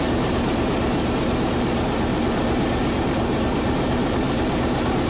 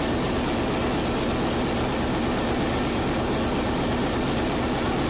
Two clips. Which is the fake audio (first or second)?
first